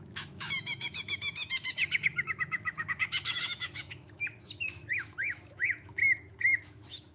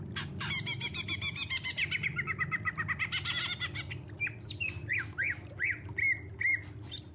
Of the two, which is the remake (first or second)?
first